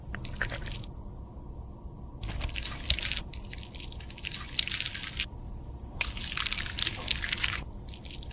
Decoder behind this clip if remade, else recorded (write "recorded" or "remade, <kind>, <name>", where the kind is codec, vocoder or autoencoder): recorded